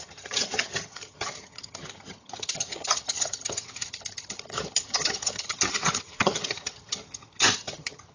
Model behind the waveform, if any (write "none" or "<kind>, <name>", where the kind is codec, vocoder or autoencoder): vocoder, HiFi-GAN